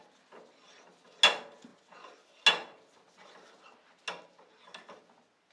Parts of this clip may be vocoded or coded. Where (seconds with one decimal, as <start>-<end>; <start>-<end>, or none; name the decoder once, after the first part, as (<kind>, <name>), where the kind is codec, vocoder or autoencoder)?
none